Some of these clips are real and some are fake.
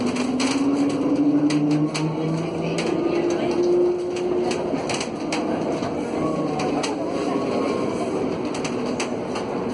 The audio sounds real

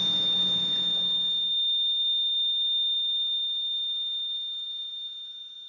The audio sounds fake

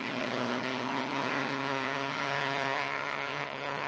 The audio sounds fake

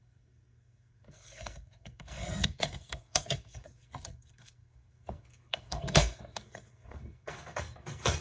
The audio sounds fake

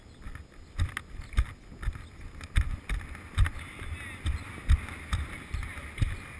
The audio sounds real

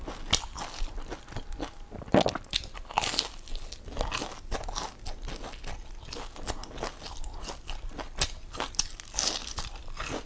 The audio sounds real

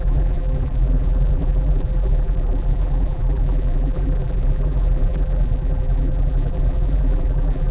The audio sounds fake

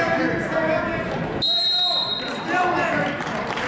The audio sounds real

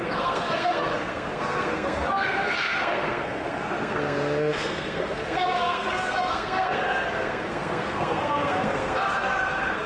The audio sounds fake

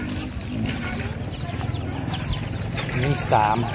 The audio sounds real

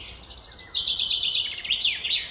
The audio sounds real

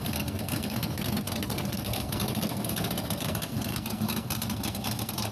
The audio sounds fake